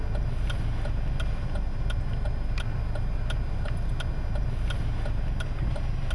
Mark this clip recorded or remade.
recorded